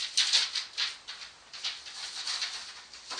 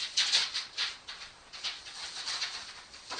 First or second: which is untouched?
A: first